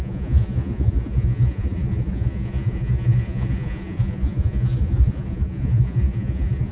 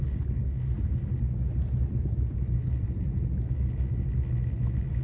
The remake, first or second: first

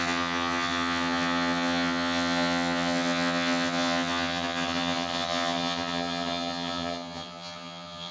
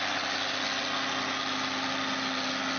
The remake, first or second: first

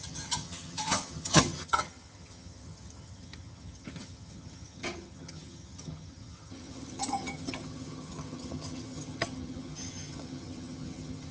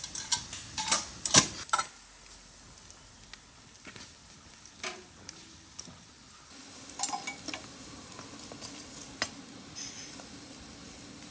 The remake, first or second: first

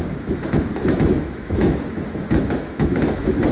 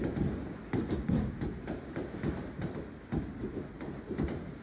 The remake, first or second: first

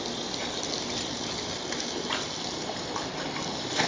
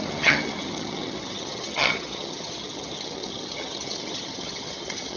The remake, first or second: second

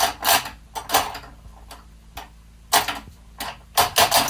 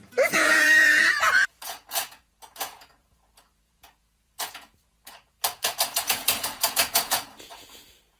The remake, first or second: second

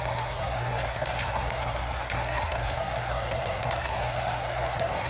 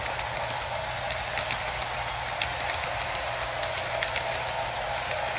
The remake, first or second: first